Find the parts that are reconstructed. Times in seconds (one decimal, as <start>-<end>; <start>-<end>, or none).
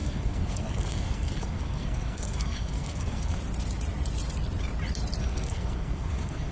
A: 0.0-3.4; 5.2-6.5